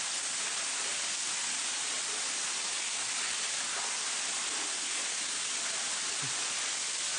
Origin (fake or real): real